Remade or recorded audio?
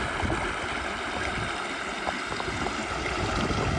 recorded